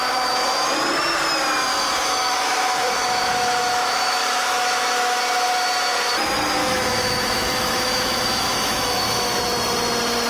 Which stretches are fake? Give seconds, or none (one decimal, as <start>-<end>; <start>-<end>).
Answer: 1.7-5.2; 6.6-9.4